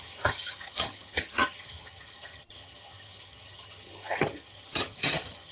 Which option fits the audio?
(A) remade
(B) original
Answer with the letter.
A